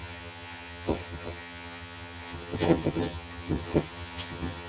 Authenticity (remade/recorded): remade